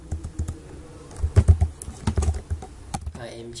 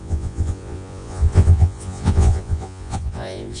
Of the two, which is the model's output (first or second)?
second